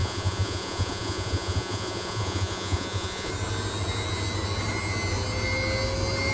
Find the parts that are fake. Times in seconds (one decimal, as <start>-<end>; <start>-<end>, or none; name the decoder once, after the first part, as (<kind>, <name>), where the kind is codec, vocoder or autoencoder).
0.0-3.3 (vocoder, Vocos)